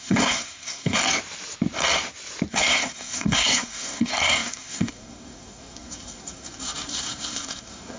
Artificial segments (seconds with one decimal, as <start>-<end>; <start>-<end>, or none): 0.0-1.0; 2.5-8.0